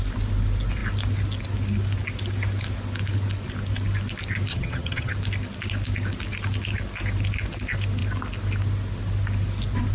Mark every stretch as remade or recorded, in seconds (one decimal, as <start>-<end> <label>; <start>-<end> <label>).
0.0-4.5 recorded; 4.5-5.1 remade; 5.1-9.9 recorded